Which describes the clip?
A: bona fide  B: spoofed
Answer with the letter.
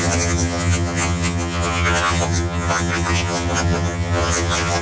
B